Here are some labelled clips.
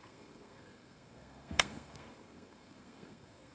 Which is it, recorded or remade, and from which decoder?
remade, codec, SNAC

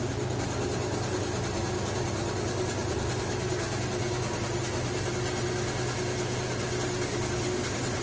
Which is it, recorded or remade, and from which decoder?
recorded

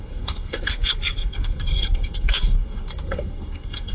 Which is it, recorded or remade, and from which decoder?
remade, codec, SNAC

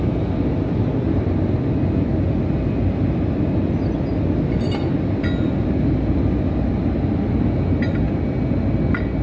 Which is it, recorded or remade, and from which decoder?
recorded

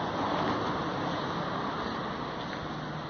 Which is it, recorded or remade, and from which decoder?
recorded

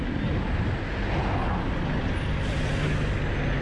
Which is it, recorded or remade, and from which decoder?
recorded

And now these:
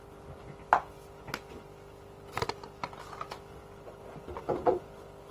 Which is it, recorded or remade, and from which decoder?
recorded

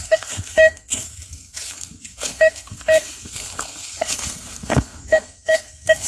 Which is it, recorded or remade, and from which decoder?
remade, codec, SNAC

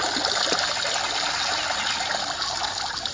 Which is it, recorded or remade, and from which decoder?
recorded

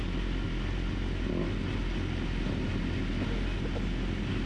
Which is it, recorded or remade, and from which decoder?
recorded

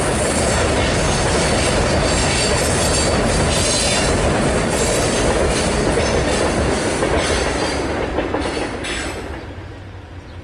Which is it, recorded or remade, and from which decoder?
recorded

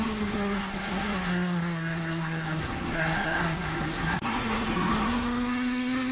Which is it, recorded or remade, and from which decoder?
remade, codec, SNAC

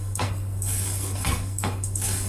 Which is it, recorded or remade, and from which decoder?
remade, codec, SNAC